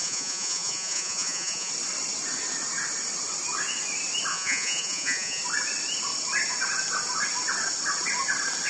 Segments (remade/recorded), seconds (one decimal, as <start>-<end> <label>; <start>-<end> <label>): 0.0-1.7 remade; 1.7-4.3 recorded; 4.3-5.4 remade; 5.4-8.7 recorded